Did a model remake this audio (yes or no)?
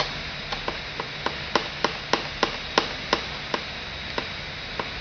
no